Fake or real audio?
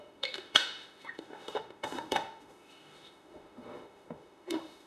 fake